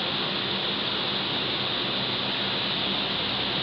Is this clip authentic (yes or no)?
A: yes